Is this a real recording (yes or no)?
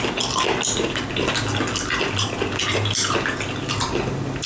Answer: yes